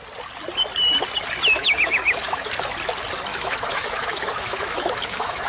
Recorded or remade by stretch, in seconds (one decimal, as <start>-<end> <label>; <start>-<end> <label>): 0.0-1.6 recorded; 1.6-2.5 remade; 2.5-3.3 recorded; 3.3-5.5 remade